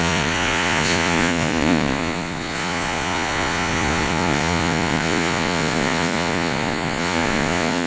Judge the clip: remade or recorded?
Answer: remade